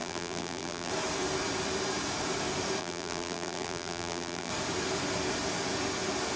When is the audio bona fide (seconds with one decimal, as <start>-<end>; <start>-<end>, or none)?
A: 0.9-2.8; 4.5-6.4